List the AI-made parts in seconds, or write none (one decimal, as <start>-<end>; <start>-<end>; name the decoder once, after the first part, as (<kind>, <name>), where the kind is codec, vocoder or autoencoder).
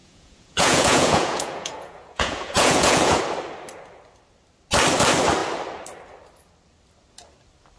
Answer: 0.0-3.2 (vocoder, Vocos)